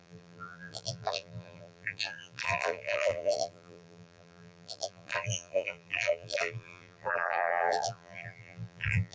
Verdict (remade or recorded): remade